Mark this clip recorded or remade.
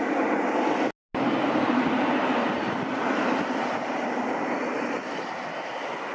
recorded